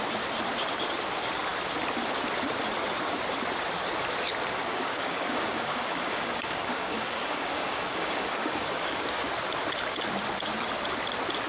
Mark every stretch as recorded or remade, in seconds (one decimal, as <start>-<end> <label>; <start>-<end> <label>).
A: 0.0-4.7 recorded; 4.7-9.3 remade; 9.3-11.5 recorded